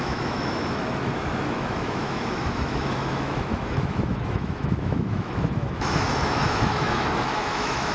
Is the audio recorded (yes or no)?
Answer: no